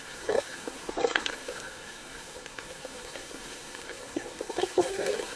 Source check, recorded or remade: remade